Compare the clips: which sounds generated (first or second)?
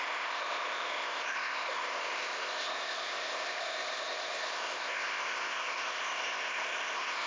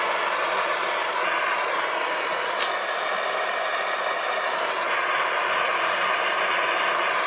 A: first